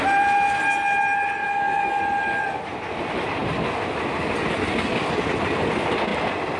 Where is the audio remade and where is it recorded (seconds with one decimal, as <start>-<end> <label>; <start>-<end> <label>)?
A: 0.0-1.4 recorded; 1.4-2.0 remade; 2.0-6.6 recorded